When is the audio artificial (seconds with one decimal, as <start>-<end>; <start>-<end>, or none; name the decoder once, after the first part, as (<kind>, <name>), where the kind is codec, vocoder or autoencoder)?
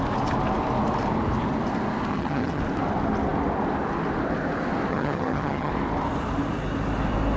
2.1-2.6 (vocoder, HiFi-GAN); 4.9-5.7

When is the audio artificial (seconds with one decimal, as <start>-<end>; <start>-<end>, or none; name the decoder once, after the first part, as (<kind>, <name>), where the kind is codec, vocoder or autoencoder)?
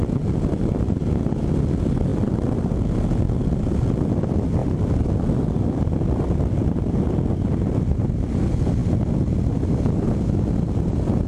4.6-5.8 (vocoder, BigVGAN v2)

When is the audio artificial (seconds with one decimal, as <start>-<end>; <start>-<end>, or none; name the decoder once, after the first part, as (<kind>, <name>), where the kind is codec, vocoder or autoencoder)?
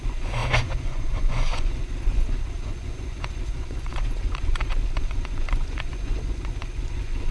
0.0-7.3 (vocoder, Vocos)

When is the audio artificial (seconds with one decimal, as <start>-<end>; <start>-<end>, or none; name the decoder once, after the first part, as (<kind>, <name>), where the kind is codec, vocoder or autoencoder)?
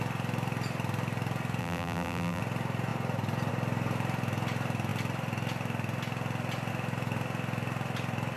1.6-2.4 (vocoder, BigVGAN v2)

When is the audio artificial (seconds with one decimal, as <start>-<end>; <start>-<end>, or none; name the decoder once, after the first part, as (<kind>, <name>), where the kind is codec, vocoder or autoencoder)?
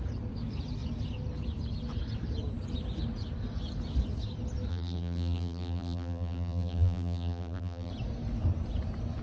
4.7-7.9 (vocoder, BigVGAN v2)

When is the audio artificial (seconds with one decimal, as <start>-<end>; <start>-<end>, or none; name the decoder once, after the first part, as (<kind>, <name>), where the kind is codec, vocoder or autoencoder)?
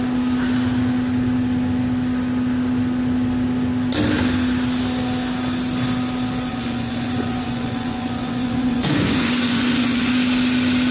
6.5-10.1 (vocoder, Vocos)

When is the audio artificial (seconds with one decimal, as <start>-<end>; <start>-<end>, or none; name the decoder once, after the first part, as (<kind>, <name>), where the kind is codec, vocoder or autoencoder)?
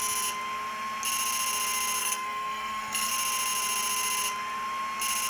2.0-3.1 (codec, SNAC)